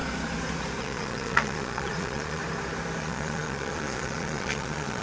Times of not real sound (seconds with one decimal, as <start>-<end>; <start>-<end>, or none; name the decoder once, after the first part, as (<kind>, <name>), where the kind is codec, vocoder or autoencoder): 0.8-2.4 (vocoder, Vocos); 3.0-5.0